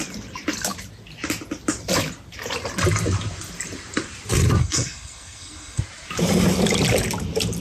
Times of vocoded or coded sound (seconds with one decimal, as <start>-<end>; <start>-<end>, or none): 4.6-5.8